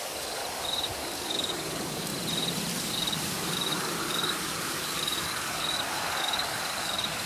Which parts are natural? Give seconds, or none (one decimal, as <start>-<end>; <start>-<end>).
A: 0.4-0.9; 2.1-2.8